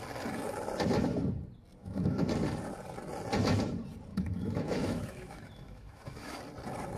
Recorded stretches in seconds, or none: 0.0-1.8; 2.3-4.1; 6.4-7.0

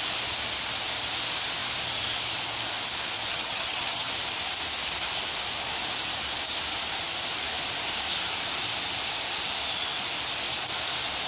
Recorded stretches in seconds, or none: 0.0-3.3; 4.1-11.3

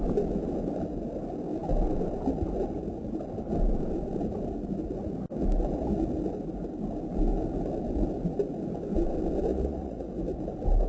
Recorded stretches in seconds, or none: 0.0-9.5; 10.1-10.9